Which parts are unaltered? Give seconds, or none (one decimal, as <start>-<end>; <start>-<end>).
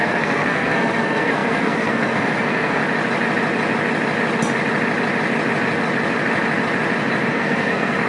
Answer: 2.8-7.3